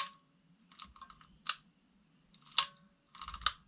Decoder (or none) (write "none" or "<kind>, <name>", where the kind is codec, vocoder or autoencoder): none